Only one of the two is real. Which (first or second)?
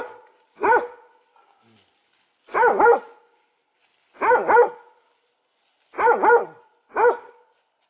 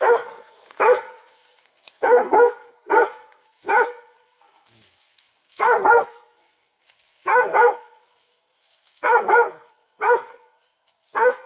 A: first